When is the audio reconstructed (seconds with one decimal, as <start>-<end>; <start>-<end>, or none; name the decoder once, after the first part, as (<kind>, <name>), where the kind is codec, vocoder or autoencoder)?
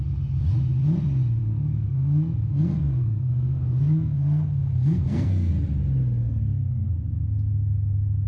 1.4-5.5 (codec, SNAC); 6.2-6.9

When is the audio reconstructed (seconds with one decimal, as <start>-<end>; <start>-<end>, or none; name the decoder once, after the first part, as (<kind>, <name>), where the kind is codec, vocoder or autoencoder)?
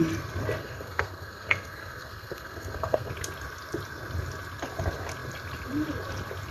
0.6-3.1 (codec, SNAC)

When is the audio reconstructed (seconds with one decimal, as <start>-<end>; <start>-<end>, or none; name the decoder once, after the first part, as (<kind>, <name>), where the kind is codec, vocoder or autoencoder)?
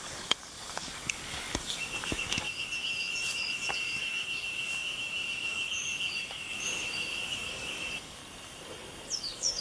0.0-8.2 (codec, DAC); 9.2-9.6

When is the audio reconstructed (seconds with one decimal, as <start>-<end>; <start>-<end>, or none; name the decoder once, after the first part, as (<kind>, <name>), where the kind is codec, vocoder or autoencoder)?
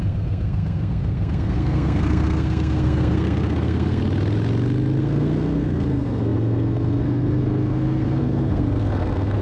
0.0-4.0 (codec, SNAC); 5.0-9.4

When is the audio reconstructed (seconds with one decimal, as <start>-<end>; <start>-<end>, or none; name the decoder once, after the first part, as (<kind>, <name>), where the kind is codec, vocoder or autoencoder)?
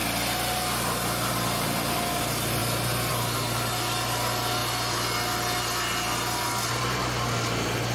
none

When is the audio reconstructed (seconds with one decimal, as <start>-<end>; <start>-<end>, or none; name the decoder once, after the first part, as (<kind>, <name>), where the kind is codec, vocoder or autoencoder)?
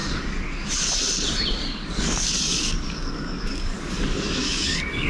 0.0-0.7 (codec, DAC); 1.6-5.1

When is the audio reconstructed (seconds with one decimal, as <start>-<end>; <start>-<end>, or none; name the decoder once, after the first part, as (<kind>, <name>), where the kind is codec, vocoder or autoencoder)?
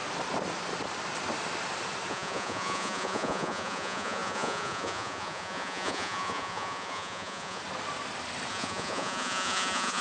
2.1-7.6 (vocoder, Vocos); 8.5-10.0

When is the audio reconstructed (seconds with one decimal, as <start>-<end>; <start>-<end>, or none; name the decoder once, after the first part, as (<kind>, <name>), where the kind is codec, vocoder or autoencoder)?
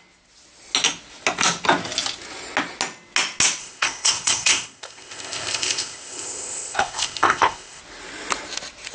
3.6-7.8 (codec, ZipCodec)